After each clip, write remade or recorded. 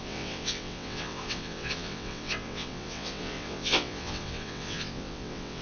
remade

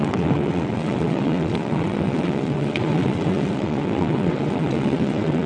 remade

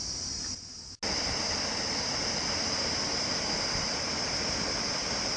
recorded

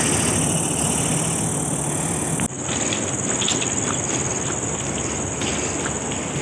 recorded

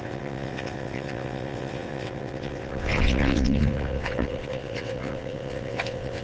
remade